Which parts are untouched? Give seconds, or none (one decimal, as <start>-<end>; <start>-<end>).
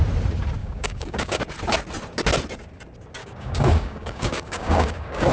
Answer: 0.0-0.6; 1.4-3.2